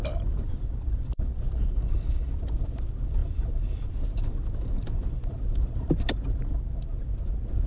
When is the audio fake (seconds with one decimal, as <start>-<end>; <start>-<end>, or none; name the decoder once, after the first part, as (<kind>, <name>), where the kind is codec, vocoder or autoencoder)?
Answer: none